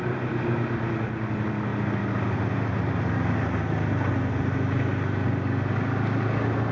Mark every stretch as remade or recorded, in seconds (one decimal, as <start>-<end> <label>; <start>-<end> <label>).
0.0-6.7 recorded